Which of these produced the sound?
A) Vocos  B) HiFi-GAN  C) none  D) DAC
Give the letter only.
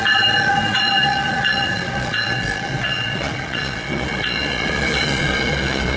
A